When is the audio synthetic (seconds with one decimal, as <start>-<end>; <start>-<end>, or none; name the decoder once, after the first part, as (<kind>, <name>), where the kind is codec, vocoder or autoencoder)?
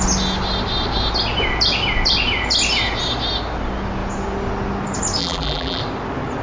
5.2-5.8 (vocoder, BigVGAN v2)